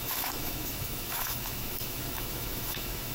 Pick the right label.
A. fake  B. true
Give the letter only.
A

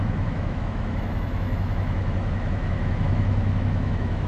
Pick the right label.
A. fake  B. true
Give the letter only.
A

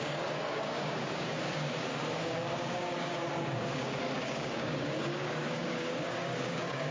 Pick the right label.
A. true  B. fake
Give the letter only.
B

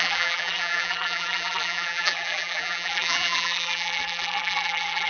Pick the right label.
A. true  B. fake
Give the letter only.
B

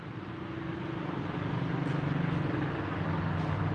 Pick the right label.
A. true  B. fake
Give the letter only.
A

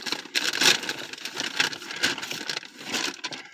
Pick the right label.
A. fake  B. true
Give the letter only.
B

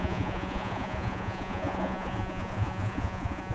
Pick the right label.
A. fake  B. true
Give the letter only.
A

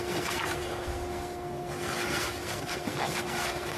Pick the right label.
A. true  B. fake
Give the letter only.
B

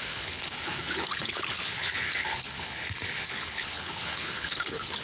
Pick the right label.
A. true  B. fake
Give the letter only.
B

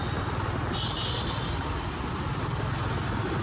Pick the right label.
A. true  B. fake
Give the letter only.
A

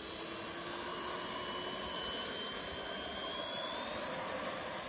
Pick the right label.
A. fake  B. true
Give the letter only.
B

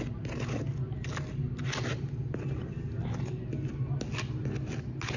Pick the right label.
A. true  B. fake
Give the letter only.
A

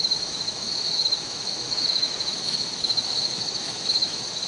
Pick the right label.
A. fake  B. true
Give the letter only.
A